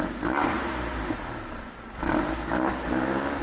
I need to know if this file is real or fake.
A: fake